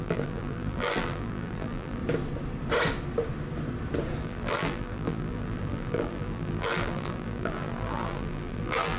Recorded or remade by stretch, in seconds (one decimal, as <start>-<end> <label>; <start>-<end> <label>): 0.0-2.0 remade; 2.0-4.2 recorded; 4.2-9.0 remade